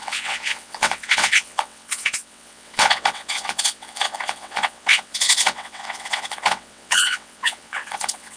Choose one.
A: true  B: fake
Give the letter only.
B